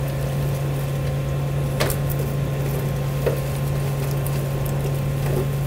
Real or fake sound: real